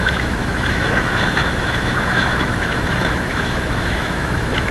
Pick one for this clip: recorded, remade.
remade